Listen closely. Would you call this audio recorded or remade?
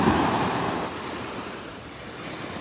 remade